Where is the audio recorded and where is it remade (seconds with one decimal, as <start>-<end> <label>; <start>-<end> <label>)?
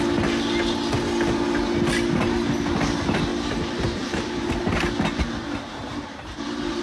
0.0-3.3 recorded; 3.3-4.6 remade; 4.6-5.7 recorded; 5.7-6.8 remade